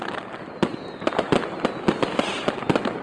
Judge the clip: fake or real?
real